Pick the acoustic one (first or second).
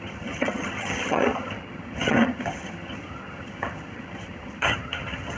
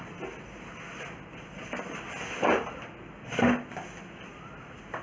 second